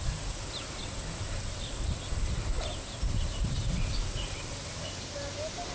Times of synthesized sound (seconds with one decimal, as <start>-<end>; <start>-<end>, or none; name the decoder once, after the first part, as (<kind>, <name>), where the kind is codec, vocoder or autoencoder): none